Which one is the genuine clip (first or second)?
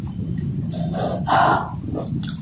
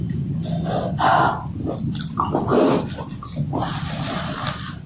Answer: second